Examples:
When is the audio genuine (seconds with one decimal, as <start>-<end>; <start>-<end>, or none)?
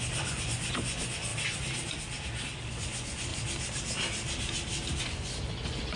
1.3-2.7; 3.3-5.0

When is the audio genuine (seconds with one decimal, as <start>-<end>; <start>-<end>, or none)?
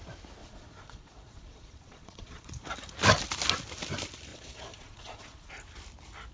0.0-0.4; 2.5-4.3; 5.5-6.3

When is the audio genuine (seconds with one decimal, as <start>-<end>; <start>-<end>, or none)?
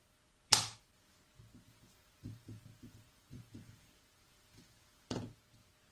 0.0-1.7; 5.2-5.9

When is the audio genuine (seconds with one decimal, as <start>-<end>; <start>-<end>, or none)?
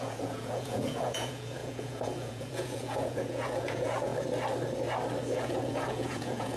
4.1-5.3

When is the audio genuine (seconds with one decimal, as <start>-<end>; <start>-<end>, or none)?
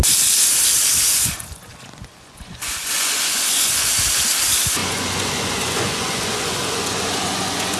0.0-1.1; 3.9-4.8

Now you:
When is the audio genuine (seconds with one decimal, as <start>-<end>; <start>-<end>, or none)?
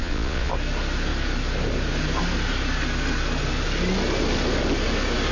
0.5-5.3